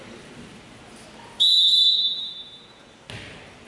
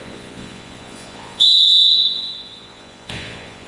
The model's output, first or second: second